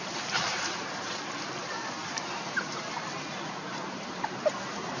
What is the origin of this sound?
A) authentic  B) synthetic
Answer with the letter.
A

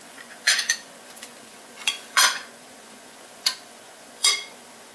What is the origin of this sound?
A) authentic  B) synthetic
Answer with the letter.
B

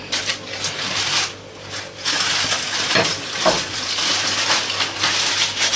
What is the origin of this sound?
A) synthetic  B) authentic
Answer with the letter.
B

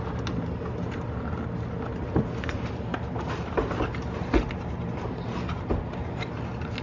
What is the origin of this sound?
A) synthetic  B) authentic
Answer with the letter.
B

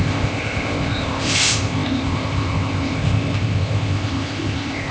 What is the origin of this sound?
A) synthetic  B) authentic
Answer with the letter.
A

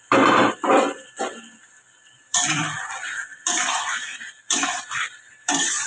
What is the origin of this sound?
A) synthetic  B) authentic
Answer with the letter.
A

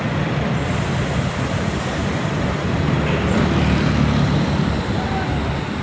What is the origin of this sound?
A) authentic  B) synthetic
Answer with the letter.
A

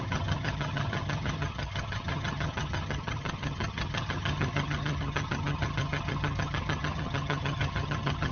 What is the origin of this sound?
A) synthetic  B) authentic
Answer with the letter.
A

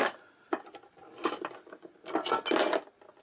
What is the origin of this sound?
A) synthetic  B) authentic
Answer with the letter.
B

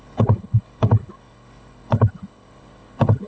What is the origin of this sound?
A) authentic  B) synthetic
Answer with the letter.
B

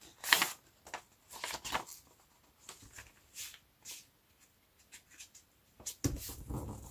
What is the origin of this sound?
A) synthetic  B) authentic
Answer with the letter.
B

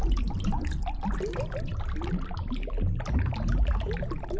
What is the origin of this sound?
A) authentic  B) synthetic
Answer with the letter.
A